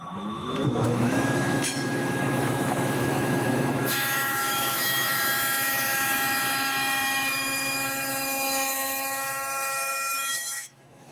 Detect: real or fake fake